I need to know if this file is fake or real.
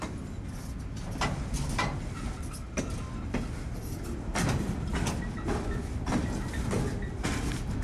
real